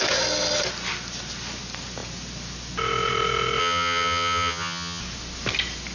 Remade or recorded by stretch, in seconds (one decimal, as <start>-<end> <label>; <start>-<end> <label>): 0.0-3.6 recorded; 3.6-5.0 remade; 5.0-5.9 recorded